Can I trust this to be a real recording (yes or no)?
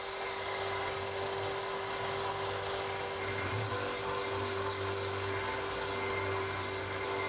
yes